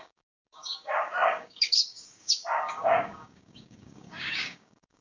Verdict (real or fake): fake